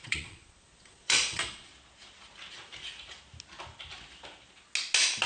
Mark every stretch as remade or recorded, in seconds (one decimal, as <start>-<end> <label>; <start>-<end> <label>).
0.0-1.7 remade; 1.7-5.3 recorded